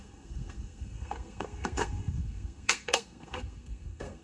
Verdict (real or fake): fake